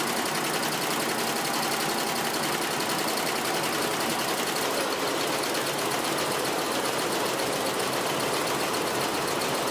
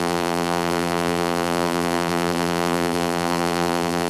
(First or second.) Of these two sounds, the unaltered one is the first